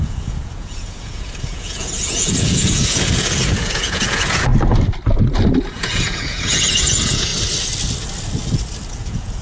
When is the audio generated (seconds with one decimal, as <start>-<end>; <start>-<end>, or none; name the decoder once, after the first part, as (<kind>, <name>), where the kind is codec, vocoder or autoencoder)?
0.0-4.5 (vocoder, Vocos); 5.6-7.3; 9.0-9.4